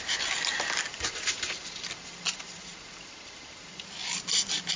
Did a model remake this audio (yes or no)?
no